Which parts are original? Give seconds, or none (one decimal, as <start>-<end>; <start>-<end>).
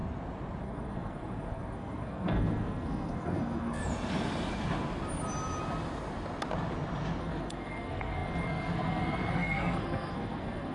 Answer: 0.0-0.6; 3.8-7.2